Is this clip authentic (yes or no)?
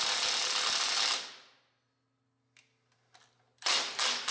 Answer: yes